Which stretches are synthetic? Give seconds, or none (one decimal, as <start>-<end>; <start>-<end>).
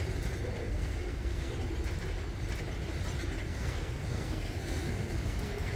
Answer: 0.6-1.5; 3.4-5.8